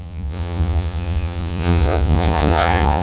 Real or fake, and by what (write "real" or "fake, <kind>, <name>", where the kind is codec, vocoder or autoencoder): fake, vocoder, Vocos